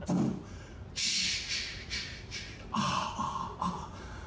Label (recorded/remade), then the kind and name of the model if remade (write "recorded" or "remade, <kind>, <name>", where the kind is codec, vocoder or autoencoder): recorded